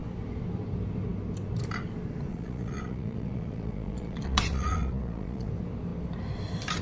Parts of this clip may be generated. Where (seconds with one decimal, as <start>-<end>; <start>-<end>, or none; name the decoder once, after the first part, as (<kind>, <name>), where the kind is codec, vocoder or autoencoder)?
2.3-5.5 (vocoder, Vocos)